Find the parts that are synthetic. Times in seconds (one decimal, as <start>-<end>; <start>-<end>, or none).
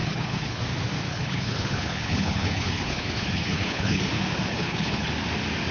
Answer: 0.0-0.6; 1.1-4.1; 4.5-5.1